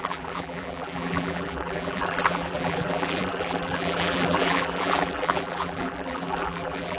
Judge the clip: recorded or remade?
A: remade